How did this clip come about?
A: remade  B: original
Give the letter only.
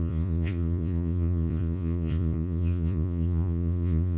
A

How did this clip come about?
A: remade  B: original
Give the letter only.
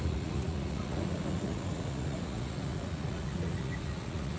A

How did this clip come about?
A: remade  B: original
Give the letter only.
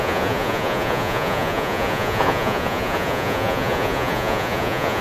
A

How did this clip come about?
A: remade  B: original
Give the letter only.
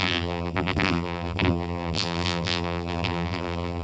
A